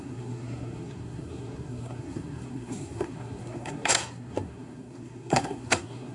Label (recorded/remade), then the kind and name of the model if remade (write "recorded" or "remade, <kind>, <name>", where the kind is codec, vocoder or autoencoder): remade, codec, SNAC